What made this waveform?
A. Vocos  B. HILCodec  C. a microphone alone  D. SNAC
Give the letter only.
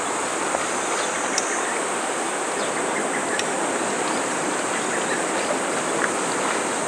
C